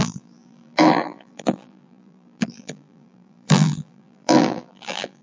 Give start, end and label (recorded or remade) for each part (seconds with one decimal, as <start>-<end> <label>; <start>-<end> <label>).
0.0-5.2 remade